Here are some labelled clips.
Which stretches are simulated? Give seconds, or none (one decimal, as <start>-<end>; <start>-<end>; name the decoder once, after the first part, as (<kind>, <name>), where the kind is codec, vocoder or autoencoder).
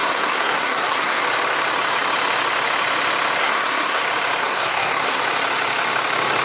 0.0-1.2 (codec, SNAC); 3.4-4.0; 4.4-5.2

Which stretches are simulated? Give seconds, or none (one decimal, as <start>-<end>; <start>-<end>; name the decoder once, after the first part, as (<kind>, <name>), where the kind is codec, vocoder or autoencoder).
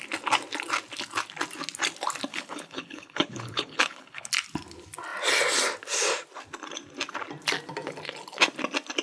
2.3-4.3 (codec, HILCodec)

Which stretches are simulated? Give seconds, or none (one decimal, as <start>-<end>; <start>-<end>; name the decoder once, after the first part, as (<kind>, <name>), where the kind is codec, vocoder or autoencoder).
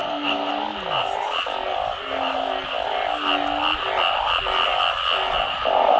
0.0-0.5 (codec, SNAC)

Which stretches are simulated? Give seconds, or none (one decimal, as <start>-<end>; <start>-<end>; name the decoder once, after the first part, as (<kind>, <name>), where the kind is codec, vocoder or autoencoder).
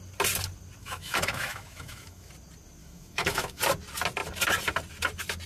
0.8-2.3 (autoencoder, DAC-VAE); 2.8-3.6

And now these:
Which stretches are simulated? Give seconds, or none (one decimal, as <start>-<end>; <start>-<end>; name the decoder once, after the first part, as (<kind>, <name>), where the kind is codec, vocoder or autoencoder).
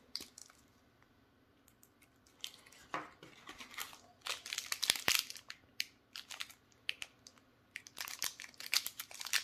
none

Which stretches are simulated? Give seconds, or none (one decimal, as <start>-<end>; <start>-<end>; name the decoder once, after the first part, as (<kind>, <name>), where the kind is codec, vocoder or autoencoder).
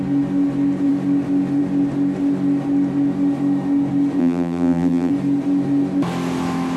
4.2-5.1 (vocoder, BigVGAN v2)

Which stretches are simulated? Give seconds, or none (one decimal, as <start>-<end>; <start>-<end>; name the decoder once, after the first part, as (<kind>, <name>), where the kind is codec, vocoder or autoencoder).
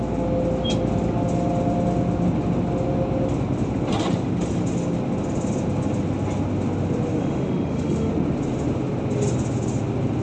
7.2-8.1 (autoencoder, DAC-VAE)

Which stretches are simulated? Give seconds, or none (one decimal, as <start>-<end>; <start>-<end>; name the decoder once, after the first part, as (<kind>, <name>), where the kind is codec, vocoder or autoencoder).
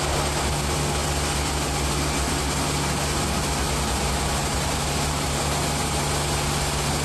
4.4-5.4 (vocoder, BigVGAN v2)